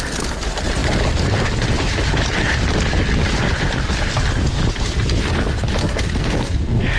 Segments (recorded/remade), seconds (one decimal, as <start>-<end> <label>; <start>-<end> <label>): 0.0-5.8 recorded; 5.8-7.0 remade